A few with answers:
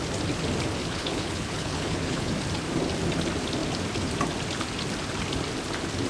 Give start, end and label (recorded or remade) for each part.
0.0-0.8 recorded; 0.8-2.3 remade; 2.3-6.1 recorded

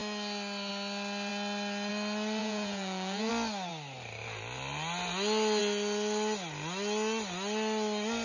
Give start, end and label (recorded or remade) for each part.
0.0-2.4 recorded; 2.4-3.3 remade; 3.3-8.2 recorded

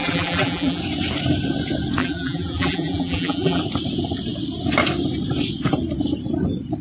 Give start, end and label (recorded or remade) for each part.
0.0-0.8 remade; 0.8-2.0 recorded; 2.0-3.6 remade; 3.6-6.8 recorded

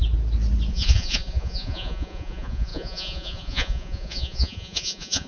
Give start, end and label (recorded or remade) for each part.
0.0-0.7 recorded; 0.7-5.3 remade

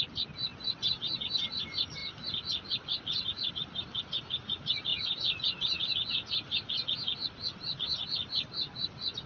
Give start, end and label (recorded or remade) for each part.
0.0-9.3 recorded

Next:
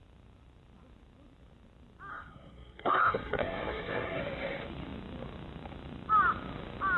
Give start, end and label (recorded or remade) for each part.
0.0-2.1 recorded; 2.1-4.2 remade; 4.2-7.0 recorded